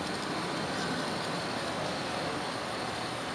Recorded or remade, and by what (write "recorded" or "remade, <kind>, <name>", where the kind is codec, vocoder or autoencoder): recorded